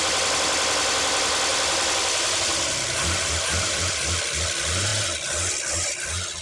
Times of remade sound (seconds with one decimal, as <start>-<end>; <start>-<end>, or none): 1.5-4.0